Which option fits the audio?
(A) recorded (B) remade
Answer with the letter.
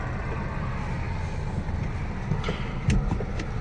A